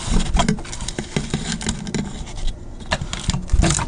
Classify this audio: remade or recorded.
recorded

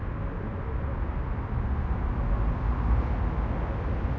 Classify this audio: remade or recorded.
recorded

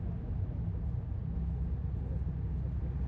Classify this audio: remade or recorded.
recorded